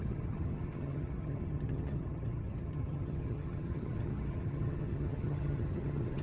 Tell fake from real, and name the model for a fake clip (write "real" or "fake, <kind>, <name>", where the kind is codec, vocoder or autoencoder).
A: fake, vocoder, HiFi-GAN